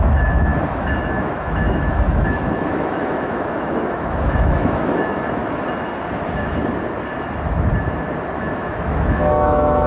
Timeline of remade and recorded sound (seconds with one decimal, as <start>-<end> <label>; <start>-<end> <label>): 0.0-5.4 remade; 5.4-8.3 recorded; 8.3-9.9 remade